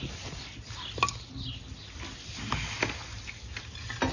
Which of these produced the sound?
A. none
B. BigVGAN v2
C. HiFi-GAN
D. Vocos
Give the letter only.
A